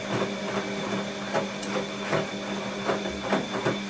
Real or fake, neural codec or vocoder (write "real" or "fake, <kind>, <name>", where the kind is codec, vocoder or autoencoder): real